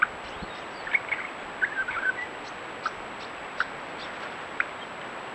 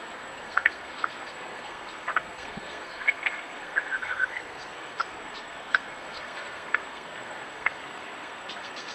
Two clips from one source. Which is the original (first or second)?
first